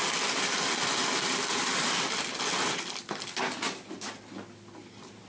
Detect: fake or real real